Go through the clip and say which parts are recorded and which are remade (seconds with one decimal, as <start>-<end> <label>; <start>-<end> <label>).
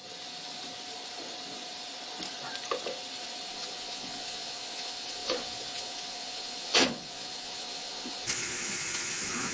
0.0-3.5 recorded; 3.5-9.5 remade